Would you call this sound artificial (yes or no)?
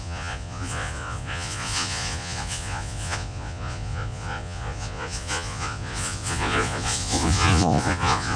yes